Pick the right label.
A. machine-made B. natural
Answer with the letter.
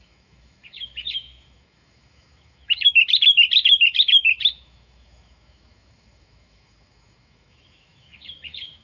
A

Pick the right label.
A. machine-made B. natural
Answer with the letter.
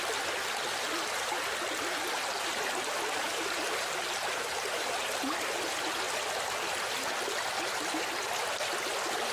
B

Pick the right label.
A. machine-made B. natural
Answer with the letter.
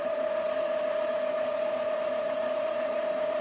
A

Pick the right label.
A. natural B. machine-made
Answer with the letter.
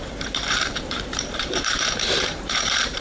B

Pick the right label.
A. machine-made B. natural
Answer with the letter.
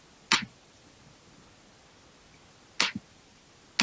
B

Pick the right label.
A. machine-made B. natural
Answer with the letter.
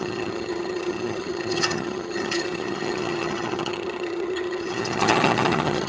A